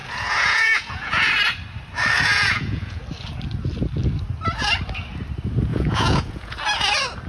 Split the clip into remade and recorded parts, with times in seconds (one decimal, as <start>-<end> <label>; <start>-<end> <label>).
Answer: 0.0-1.3 remade; 1.3-2.3 recorded; 2.3-3.0 remade; 3.0-5.7 recorded; 5.7-6.6 remade; 6.6-7.3 recorded